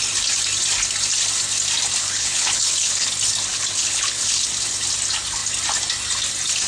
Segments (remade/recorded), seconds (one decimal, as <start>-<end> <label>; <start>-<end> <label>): 0.0-2.0 recorded; 2.0-2.9 remade; 2.9-3.5 recorded; 3.5-4.5 remade; 4.5-6.7 recorded